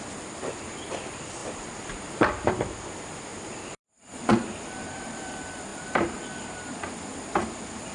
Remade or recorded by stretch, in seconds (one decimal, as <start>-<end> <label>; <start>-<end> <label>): 0.0-1.4 recorded; 1.4-2.3 remade; 2.3-3.3 recorded; 3.3-3.9 remade; 3.9-4.3 recorded; 4.3-5.3 remade; 5.3-7.9 recorded